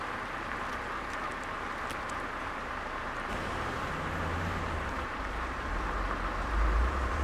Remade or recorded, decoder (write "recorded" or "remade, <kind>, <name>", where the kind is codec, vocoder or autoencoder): remade, vocoder, BigVGAN v2